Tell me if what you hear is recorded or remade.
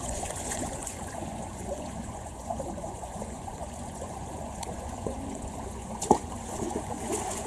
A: remade